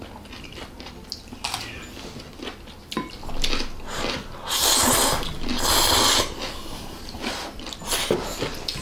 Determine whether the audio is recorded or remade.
recorded